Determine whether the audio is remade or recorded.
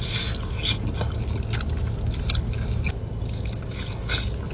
recorded